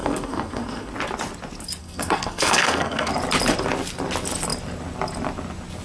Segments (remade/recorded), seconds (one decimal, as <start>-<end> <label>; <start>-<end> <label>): 0.0-0.9 remade; 0.9-1.8 recorded; 1.8-3.1 remade; 3.1-5.8 recorded